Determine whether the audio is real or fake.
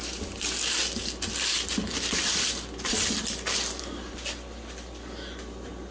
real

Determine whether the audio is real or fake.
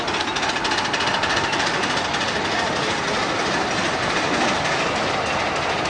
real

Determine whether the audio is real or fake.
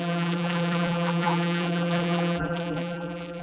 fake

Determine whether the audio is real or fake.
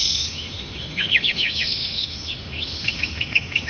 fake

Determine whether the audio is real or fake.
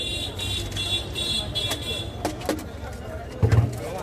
real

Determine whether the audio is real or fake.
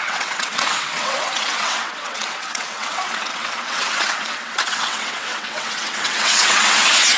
fake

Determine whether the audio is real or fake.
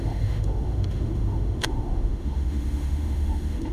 fake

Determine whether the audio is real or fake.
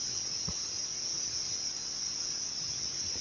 fake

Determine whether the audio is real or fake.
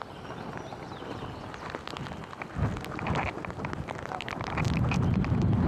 real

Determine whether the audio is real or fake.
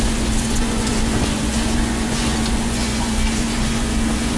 fake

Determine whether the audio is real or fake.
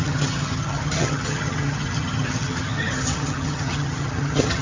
fake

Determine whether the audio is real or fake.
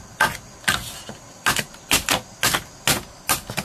real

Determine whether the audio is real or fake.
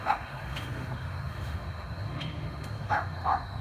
fake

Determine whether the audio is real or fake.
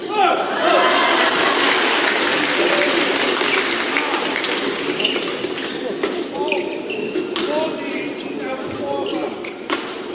fake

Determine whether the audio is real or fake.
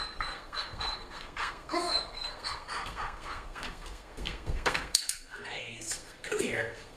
fake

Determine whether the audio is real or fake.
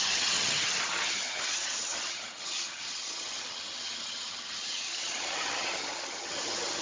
fake